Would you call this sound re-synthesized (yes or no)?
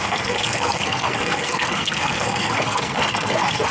yes